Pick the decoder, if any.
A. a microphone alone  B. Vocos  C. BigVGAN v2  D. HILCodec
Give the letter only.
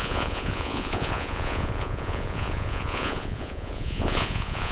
B